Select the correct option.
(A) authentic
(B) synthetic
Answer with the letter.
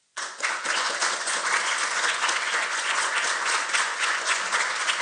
B